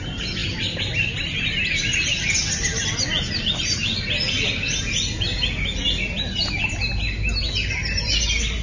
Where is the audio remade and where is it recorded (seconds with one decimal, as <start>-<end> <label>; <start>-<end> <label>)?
0.0-8.6 recorded